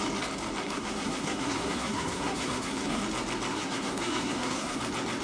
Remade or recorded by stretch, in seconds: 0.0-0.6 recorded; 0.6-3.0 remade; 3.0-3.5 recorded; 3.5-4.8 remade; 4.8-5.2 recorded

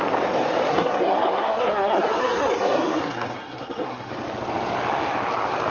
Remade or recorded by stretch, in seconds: 0.0-0.7 recorded; 0.7-4.1 remade; 4.1-5.7 recorded